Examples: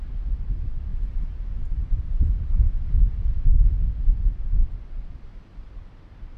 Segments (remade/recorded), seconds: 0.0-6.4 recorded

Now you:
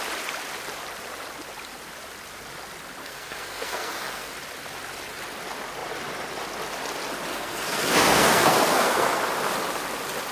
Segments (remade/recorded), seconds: 0.0-3.0 recorded; 3.0-4.3 remade; 4.3-7.3 recorded; 7.3-9.2 remade; 9.2-10.3 recorded

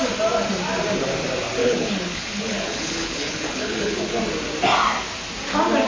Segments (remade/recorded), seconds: 0.0-1.6 recorded; 1.6-4.2 remade; 4.2-5.9 recorded

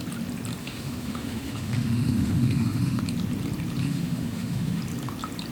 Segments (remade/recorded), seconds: 0.0-0.6 recorded; 0.6-3.0 remade; 3.0-3.8 recorded; 3.8-4.8 remade; 4.8-5.5 recorded

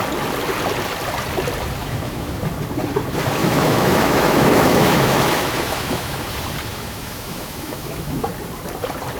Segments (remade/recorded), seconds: 0.0-1.8 recorded; 1.8-2.4 remade; 2.4-3.4 recorded; 3.4-6.3 remade; 6.3-6.7 recorded; 6.7-8.3 remade; 8.3-9.2 recorded

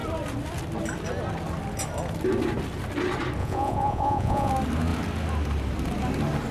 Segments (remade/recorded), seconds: 0.0-3.4 recorded; 3.4-4.5 remade; 4.5-6.5 recorded

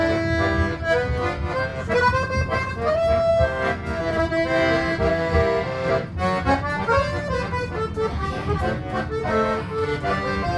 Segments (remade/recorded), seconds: 0.0-3.3 recorded; 3.3-4.0 remade; 4.0-5.1 recorded; 5.1-5.9 remade; 5.9-9.2 recorded; 9.2-10.0 remade; 10.0-10.6 recorded